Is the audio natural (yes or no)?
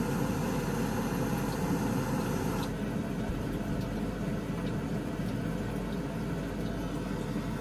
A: yes